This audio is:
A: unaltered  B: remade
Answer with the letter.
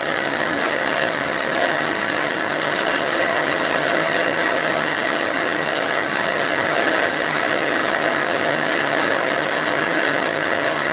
B